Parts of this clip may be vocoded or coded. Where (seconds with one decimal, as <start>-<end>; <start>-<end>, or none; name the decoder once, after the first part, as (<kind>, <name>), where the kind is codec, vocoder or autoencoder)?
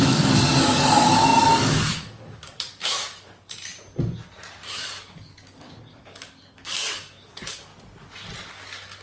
0.0-3.7 (codec, DAC); 4.7-7.7; 8.5-9.0